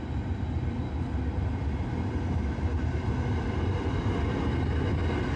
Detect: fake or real real